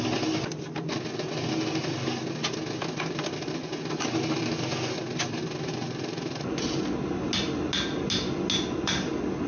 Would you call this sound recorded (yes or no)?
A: yes